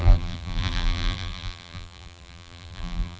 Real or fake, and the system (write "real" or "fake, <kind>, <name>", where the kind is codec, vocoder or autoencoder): fake, vocoder, BigVGAN v2